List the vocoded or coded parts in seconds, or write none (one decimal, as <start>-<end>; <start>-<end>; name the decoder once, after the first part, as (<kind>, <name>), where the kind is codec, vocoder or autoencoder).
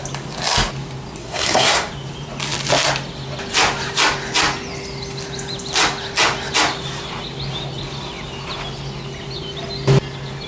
1.2-1.9 (codec, SNAC)